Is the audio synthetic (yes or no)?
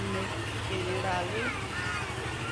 no